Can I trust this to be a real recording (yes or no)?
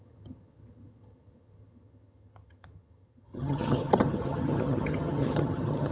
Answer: no